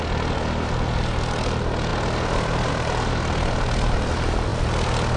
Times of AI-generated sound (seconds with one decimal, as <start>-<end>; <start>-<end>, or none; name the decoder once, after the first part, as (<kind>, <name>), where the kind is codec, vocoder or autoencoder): none